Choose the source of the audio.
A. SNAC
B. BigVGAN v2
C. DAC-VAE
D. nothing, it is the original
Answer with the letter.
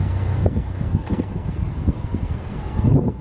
A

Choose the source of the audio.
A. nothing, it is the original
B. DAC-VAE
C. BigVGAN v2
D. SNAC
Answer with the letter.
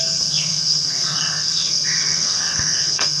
D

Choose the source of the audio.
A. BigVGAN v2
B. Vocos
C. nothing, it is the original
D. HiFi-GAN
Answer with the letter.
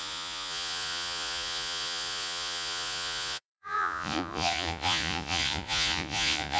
B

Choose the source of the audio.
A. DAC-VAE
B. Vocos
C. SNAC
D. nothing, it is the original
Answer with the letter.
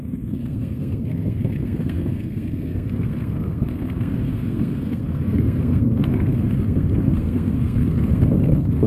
C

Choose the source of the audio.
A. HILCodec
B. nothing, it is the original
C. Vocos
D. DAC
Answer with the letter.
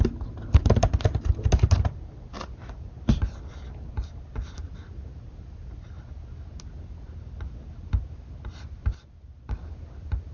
B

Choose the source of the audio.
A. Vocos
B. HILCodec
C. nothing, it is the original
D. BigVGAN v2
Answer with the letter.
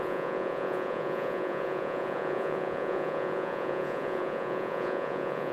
A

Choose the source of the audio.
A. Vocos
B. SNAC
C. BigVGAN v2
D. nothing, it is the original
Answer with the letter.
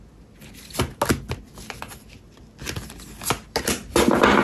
D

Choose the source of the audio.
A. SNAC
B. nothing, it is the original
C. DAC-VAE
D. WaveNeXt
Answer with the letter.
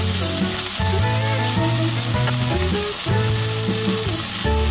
B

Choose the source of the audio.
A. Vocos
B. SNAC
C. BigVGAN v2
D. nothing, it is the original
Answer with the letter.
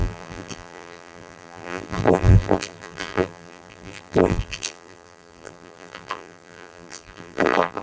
C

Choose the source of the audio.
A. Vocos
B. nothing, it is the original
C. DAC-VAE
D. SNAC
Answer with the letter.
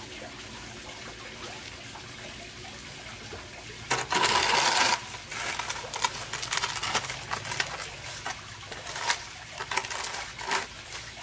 B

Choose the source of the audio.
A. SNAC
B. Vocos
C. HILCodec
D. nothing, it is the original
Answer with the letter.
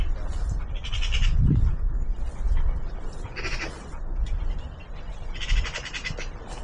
D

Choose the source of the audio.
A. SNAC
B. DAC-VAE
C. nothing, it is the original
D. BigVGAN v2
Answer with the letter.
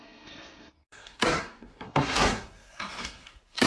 A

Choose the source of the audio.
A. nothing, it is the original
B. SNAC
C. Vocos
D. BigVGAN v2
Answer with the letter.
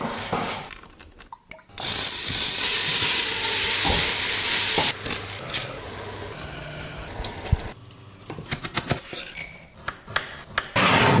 A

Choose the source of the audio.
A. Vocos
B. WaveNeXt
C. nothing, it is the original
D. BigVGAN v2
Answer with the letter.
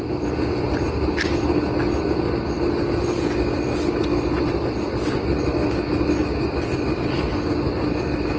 C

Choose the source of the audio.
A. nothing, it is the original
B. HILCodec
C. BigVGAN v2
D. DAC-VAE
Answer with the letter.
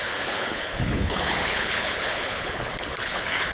B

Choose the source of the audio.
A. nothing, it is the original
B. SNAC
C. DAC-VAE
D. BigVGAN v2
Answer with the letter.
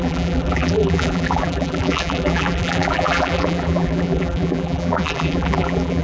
D